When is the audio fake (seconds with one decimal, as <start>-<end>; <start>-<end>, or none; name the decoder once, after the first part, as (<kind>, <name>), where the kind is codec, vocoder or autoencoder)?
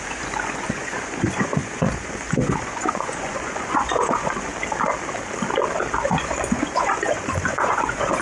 0.0-4.5 (vocoder, Vocos); 6.0-8.2